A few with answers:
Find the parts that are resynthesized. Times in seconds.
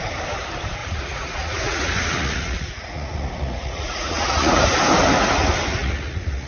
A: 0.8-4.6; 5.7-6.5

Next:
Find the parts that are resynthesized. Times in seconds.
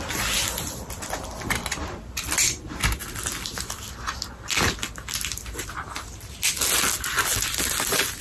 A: none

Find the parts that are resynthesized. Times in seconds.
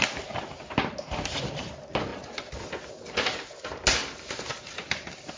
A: none